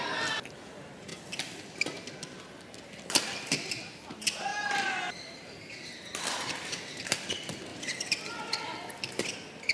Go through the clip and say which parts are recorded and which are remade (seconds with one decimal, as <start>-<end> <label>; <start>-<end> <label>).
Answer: 0.0-4.5 recorded; 4.5-5.7 remade; 5.7-7.7 recorded; 7.7-8.6 remade; 8.6-9.7 recorded